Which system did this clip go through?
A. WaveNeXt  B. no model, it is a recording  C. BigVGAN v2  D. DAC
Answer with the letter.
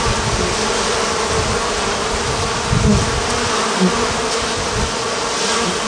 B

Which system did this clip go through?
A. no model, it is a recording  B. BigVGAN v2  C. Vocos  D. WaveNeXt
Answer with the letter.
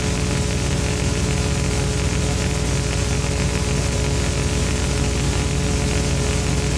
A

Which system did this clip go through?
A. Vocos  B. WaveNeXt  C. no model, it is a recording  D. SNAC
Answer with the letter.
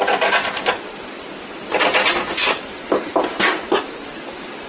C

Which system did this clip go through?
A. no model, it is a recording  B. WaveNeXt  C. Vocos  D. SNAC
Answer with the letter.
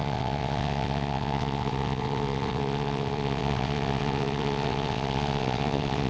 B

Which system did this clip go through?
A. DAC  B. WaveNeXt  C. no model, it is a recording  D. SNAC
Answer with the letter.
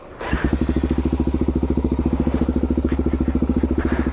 C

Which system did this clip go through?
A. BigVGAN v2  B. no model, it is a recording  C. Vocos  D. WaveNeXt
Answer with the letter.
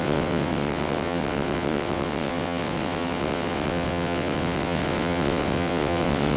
D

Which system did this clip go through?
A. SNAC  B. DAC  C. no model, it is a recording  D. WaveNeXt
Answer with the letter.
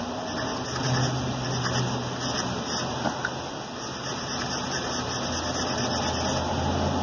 C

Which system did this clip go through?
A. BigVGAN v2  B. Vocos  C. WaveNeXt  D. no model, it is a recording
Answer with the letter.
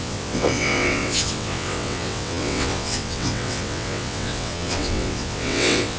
C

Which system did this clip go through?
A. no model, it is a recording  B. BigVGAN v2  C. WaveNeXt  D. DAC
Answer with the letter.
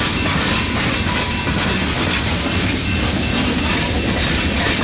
A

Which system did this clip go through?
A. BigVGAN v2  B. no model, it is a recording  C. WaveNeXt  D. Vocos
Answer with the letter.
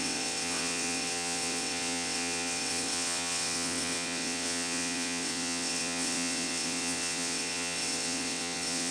C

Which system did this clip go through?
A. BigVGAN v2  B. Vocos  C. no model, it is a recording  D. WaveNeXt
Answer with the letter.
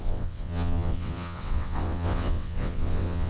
D